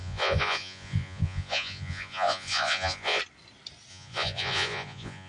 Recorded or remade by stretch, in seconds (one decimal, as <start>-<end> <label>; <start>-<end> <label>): 0.0-3.2 remade; 3.2-3.9 recorded; 3.9-5.3 remade